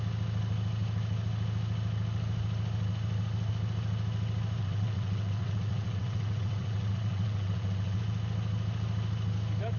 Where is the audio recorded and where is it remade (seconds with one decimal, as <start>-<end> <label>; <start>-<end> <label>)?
0.0-4.6 recorded; 4.6-8.0 remade; 8.0-9.8 recorded